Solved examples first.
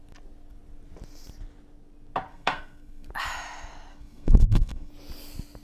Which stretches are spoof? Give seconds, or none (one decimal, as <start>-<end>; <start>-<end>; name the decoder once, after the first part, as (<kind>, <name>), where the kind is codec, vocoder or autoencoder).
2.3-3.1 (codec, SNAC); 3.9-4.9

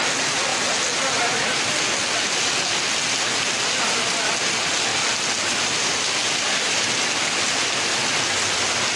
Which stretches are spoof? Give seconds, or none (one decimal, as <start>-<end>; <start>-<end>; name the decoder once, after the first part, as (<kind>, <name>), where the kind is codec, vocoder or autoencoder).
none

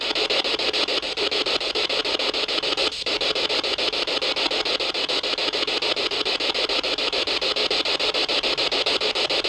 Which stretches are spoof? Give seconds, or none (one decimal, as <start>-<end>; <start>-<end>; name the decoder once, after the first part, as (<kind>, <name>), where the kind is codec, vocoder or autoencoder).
none

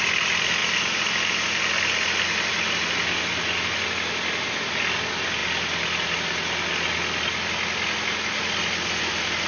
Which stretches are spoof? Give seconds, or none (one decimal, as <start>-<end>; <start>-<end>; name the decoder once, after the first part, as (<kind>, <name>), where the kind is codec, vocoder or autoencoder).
none

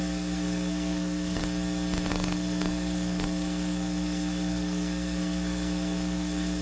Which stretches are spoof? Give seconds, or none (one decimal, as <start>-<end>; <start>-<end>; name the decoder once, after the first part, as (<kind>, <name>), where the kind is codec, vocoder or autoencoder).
0.0-1.4 (codec, SNAC); 2.1-6.6

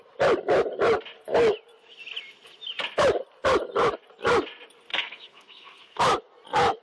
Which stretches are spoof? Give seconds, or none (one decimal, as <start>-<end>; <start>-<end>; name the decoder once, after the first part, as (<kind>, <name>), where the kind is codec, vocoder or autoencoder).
4.9-6.0 (codec, SNAC)

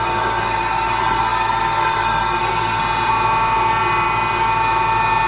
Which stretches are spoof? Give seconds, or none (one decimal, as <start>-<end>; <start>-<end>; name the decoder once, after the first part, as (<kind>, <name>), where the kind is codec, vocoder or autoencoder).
0.0-2.8 (codec, SNAC)

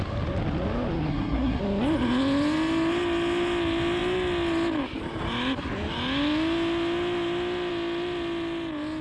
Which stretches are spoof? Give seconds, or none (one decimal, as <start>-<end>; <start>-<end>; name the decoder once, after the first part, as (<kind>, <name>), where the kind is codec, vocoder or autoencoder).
1.1-1.6 (codec, SNAC)